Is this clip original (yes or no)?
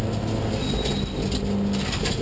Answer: yes